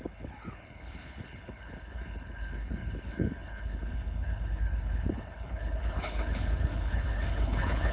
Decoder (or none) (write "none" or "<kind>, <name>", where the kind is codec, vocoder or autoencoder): codec, HILCodec